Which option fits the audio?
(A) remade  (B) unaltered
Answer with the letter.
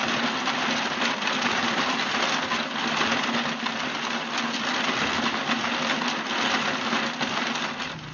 B